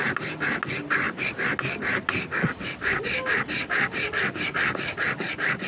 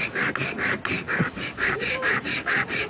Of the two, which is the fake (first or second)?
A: second